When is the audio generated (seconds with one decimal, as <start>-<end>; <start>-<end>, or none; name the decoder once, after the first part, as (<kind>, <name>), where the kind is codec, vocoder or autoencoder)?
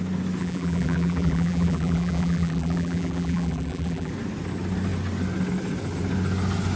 0.4-4.1 (vocoder, BigVGAN v2)